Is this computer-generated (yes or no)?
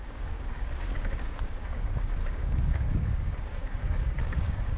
yes